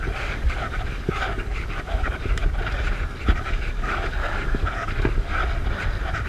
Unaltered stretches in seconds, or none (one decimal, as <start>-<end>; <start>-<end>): 2.4-3.4; 5.4-6.3